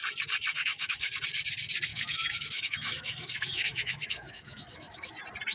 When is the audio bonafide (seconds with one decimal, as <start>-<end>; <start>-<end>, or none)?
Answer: 0.0-0.5; 1.1-1.9; 5.1-5.5